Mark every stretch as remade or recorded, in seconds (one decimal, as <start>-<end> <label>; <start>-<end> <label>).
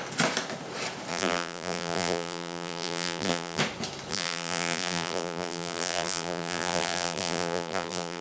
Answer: 0.0-1.1 recorded; 1.1-3.6 remade; 3.6-4.1 recorded; 4.1-8.2 remade